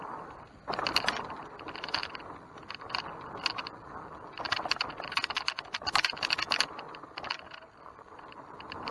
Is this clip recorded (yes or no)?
yes